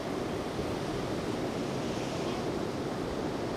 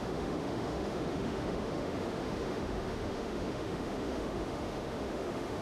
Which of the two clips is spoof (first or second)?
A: second